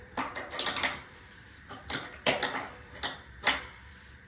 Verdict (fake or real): fake